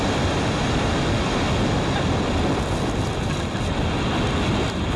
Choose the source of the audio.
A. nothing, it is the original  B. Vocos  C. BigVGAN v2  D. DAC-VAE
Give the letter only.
A